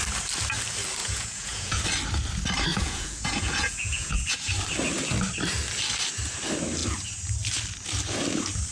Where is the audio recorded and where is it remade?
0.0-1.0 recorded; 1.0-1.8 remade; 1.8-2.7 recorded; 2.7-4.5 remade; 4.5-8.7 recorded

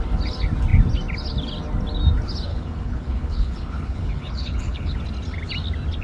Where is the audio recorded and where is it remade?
0.0-2.5 recorded; 2.5-5.0 remade; 5.0-6.0 recorded

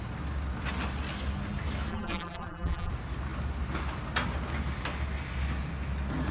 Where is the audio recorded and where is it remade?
0.0-1.9 recorded; 1.9-2.9 remade; 2.9-6.3 recorded

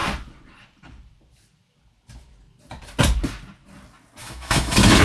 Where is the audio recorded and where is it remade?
0.0-4.2 recorded; 4.2-5.0 remade